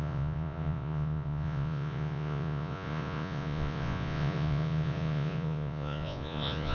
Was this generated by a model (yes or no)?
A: yes